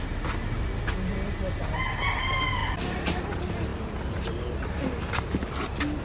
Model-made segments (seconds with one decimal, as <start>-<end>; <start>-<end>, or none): none